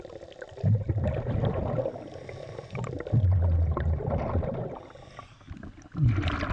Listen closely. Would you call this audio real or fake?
real